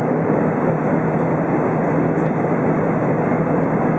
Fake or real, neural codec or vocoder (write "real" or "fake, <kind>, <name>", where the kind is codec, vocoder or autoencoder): real